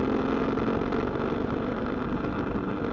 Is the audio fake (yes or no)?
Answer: no